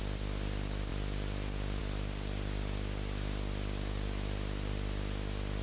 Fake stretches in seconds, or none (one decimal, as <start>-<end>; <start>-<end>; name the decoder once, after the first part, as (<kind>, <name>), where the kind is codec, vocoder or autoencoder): none